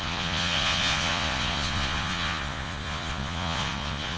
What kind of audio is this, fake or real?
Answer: fake